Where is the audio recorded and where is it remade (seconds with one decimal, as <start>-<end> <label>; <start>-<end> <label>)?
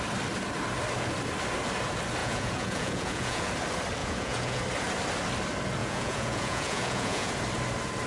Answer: 0.0-2.2 recorded; 2.2-3.5 remade; 3.5-4.0 recorded; 4.0-4.6 remade; 4.6-5.8 recorded; 5.8-7.3 remade; 7.3-8.1 recorded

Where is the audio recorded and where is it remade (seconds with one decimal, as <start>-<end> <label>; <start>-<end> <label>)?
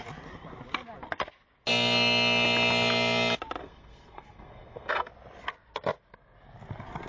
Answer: 0.0-3.6 recorded; 3.6-5.1 remade; 5.1-7.1 recorded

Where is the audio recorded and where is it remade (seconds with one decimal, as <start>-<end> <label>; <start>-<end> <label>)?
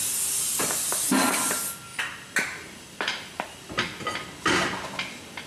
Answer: 0.0-1.9 recorded; 1.9-3.5 remade; 3.5-5.5 recorded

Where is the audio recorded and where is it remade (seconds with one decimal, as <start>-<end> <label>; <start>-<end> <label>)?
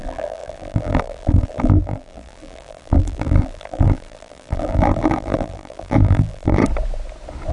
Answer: 0.0-6.6 remade; 6.6-7.5 recorded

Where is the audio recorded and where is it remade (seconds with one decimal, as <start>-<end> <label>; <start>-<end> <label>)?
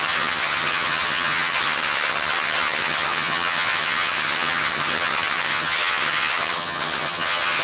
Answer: 0.0-7.6 remade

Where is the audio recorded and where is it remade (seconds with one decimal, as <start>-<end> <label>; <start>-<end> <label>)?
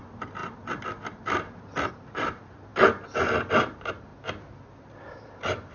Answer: 0.0-0.4 remade; 0.4-1.9 recorded; 1.9-2.7 remade; 2.7-3.5 recorded; 3.5-4.1 remade; 4.1-4.8 recorded; 4.8-5.7 remade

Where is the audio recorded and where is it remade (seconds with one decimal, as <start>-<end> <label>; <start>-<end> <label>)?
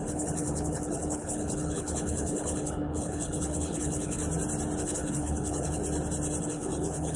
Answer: 0.0-4.2 remade; 4.2-4.8 recorded; 4.8-5.8 remade; 5.8-6.4 recorded; 6.4-7.2 remade